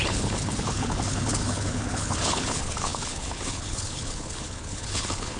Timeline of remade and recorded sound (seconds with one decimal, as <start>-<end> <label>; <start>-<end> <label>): 0.0-5.4 remade